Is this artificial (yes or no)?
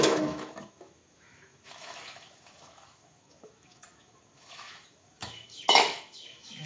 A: yes